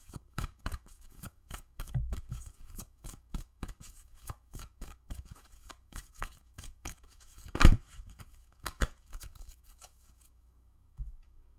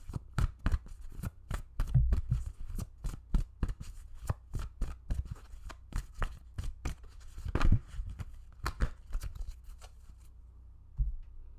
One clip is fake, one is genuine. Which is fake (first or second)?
first